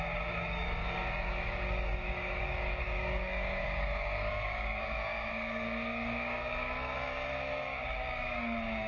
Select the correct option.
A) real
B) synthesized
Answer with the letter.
B